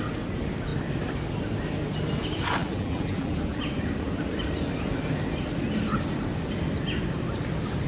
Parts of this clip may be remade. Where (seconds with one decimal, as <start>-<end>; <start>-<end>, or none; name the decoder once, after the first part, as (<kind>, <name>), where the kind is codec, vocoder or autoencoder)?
2.6-3.6 (vocoder, BigVGAN v2)